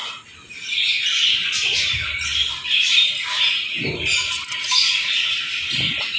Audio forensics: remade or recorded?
recorded